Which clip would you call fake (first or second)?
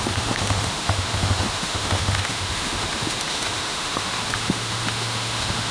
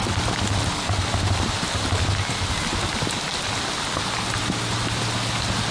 first